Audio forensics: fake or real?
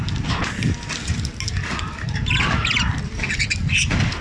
real